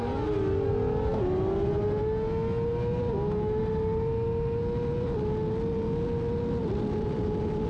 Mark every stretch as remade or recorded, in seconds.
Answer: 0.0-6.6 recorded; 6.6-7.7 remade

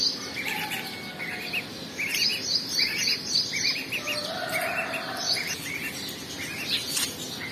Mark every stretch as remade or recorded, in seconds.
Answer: 0.0-2.3 recorded; 2.3-5.3 remade; 5.3-7.5 recorded